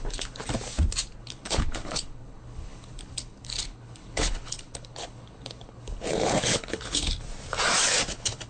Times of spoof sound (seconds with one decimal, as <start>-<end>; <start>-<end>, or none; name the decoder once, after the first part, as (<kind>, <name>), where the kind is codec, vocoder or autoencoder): 0.0-0.4 (codec, HILCodec); 1.2-7.1; 8.1-8.5